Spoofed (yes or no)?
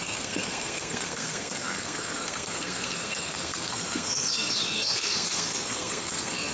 yes